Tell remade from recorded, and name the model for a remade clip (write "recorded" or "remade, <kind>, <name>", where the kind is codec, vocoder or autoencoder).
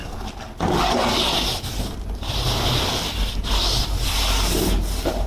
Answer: recorded